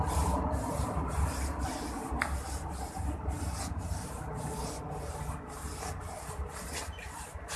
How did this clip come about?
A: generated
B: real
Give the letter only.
B